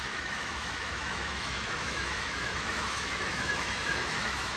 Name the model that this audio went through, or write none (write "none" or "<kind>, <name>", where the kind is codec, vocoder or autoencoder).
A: autoencoder, DAC-VAE